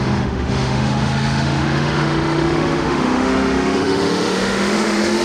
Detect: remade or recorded remade